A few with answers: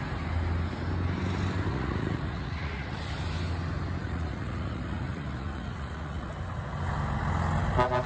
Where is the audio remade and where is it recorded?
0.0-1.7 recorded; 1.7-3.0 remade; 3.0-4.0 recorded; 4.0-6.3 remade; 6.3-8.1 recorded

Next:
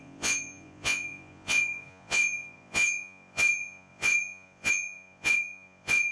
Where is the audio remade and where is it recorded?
0.0-6.1 remade

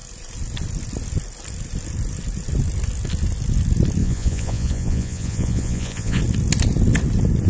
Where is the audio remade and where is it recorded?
0.0-4.0 recorded; 4.0-6.2 remade; 6.2-7.5 recorded

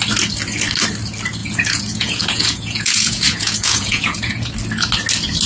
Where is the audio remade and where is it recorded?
0.0-1.4 recorded; 1.4-4.5 remade; 4.5-5.5 recorded